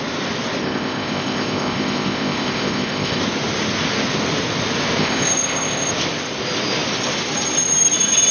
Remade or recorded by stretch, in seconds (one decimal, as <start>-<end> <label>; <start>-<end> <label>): 0.0-0.6 recorded; 0.6-3.2 remade; 3.2-5.0 recorded; 5.0-5.9 remade; 5.9-8.3 recorded